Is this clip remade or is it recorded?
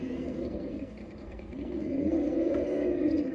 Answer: remade